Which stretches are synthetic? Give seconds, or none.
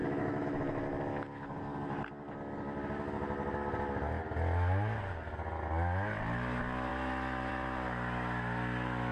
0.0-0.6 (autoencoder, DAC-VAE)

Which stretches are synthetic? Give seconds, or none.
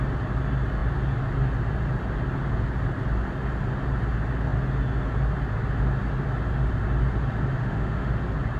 7.6-8.2 (autoencoder, DAC-VAE)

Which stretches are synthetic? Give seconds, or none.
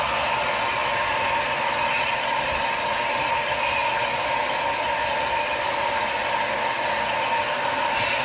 none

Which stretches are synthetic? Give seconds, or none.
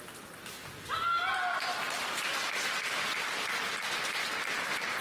none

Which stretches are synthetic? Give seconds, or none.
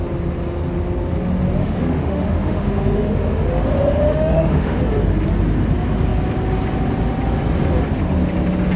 1.6-3.5 (autoencoder, DAC-VAE); 4.1-4.8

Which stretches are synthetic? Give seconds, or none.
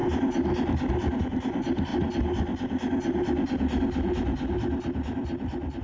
none